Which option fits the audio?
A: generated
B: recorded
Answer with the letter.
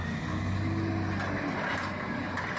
B